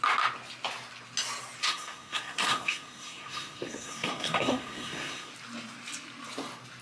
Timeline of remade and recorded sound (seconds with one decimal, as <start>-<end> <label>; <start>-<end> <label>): 0.0-1.6 recorded; 1.6-5.3 remade; 5.3-6.8 recorded